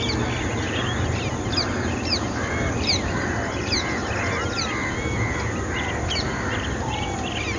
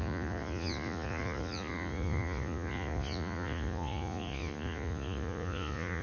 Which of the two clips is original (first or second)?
first